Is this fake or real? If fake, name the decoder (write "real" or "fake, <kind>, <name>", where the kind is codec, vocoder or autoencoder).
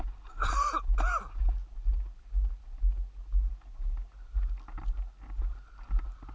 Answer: real